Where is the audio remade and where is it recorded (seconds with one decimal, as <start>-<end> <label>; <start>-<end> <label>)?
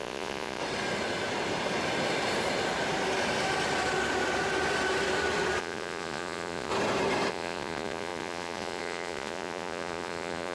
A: 0.0-0.6 remade; 0.6-5.6 recorded; 5.6-6.7 remade; 6.7-7.3 recorded; 7.3-10.5 remade